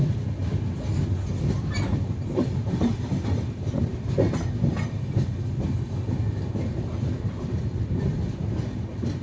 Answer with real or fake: real